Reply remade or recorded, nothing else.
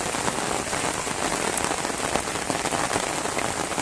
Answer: recorded